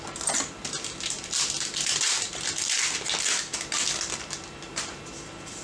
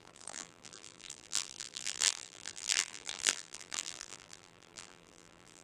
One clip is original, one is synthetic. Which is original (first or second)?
first